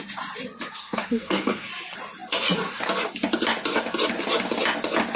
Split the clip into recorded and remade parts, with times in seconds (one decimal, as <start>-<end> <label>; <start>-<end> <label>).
0.0-0.8 recorded; 0.8-1.7 remade; 1.7-5.2 recorded